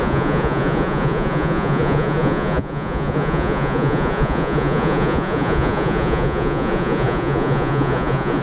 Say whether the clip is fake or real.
fake